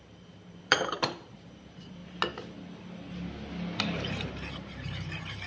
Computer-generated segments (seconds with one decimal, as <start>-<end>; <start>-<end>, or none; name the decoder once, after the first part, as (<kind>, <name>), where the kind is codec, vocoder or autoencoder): 0.0-2.0 (vocoder, BigVGAN v2); 3.8-5.5